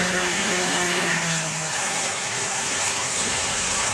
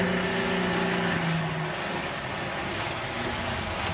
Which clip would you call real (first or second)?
second